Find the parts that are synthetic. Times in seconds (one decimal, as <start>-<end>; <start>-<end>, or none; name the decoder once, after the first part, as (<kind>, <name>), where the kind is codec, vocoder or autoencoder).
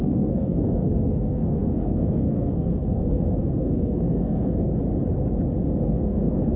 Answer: 0.0-4.7 (codec, SNAC); 5.8-6.6